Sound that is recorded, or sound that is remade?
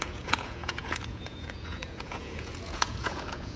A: remade